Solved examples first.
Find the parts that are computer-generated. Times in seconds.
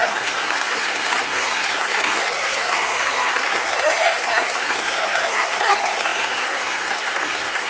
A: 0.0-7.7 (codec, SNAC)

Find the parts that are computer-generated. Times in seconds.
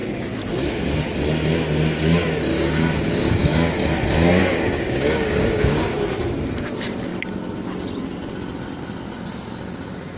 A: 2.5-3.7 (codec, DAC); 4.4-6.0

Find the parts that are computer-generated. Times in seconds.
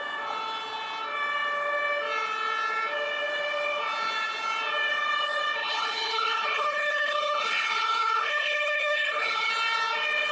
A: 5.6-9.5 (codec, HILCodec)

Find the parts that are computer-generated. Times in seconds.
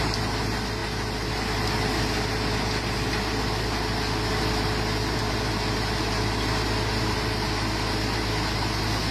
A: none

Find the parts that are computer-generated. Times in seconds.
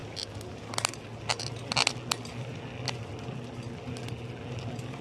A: none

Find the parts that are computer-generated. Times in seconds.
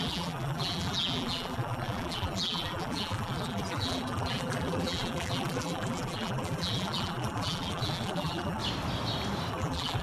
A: 0.0-8.6 (vocoder, BigVGAN v2); 9.5-10.0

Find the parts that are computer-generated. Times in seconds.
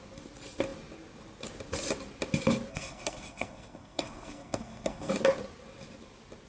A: 2.7-5.1 (codec, SNAC)